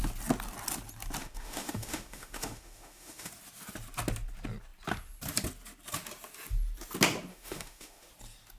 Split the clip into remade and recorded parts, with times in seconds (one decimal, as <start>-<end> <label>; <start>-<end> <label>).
0.0-1.2 recorded; 1.2-3.3 remade; 3.3-7.3 recorded; 7.3-8.1 remade; 8.1-8.6 recorded